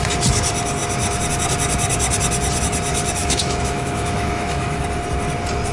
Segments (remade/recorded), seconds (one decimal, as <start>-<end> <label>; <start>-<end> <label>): 0.0-3.2 recorded; 3.2-4.8 remade; 4.8-5.7 recorded